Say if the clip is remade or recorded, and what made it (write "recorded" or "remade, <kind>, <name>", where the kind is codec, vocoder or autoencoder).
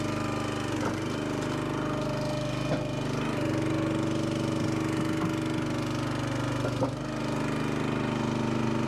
recorded